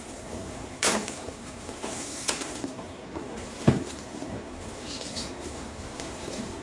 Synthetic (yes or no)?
yes